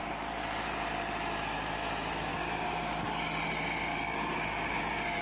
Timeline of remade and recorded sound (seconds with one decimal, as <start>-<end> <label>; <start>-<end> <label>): 0.0-2.3 recorded; 2.3-3.1 remade; 3.1-3.9 recorded; 3.9-4.8 remade; 4.8-5.2 recorded